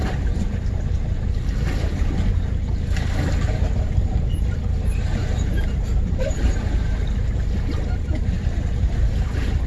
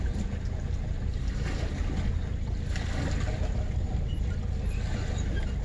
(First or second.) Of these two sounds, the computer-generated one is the first